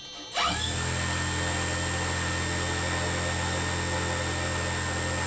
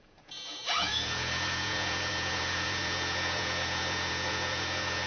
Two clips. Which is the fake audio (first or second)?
second